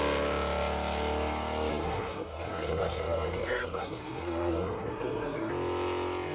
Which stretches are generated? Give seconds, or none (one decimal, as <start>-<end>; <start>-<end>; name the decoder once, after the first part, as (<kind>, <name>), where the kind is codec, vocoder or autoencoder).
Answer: 1.7-5.5 (codec, SNAC)